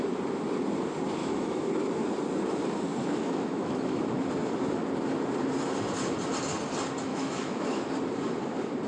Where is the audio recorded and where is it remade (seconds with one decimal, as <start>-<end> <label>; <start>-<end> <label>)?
0.0-1.2 recorded; 1.2-1.7 remade; 1.7-3.0 recorded; 3.0-4.0 remade; 4.0-7.1 recorded; 7.1-7.9 remade; 7.9-8.9 recorded